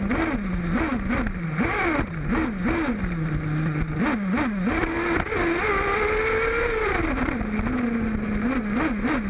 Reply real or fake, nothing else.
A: real